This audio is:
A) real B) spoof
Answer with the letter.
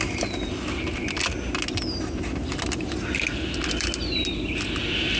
A